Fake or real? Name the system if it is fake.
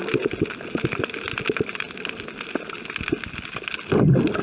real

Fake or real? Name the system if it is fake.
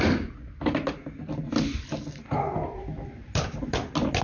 real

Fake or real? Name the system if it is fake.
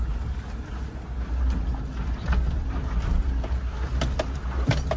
real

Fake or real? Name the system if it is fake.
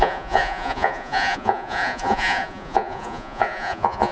fake, vocoder, Vocos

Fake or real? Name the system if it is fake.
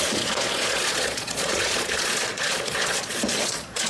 fake, vocoder, Vocos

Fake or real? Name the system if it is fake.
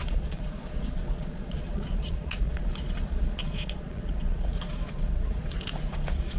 fake, vocoder, Vocos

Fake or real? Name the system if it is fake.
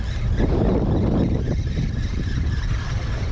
real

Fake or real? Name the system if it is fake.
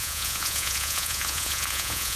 fake, vocoder, Vocos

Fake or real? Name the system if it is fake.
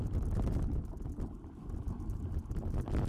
real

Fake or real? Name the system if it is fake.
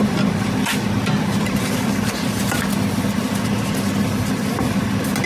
real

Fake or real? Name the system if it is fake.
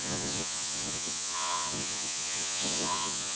fake, vocoder, Vocos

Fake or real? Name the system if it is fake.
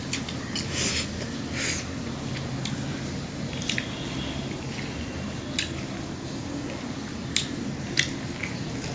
real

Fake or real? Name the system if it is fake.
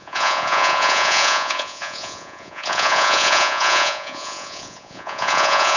fake, vocoder, Vocos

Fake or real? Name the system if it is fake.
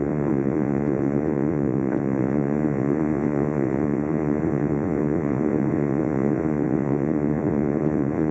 fake, vocoder, Vocos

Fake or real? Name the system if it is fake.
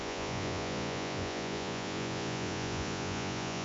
fake, vocoder, Vocos